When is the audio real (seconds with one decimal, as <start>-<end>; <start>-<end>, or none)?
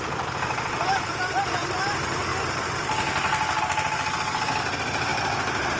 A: 0.0-5.1